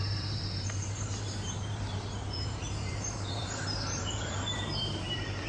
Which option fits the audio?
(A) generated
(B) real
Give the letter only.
A